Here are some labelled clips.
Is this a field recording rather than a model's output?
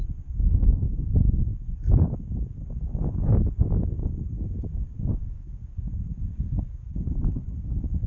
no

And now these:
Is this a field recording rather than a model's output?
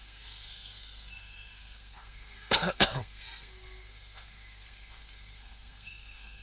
no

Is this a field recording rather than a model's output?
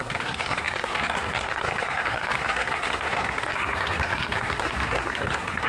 no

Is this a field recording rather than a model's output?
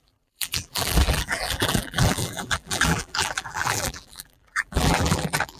no